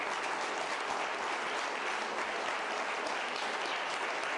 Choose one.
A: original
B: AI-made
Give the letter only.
A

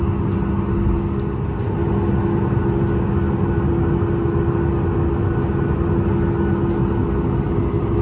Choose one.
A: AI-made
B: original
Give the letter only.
B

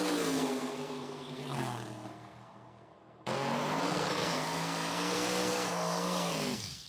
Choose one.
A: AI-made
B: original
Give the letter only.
A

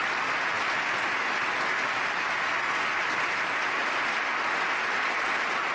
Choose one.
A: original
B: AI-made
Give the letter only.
A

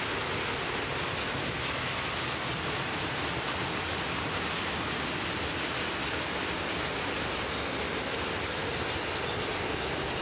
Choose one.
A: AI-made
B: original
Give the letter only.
B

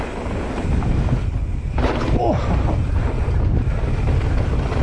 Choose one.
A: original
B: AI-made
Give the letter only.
A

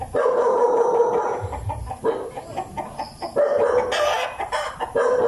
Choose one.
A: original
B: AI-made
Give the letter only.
A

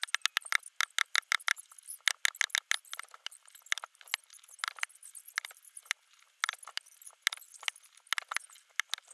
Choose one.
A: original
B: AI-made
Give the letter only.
A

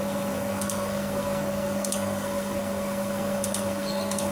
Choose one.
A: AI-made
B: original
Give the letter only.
A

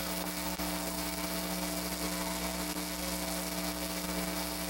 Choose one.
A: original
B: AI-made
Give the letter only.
B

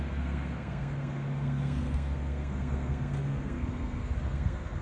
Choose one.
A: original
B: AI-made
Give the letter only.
B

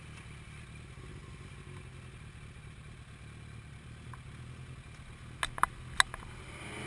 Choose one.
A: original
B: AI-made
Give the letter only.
A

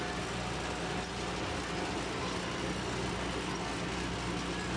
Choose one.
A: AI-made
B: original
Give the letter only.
B